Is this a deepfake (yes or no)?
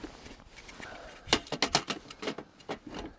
no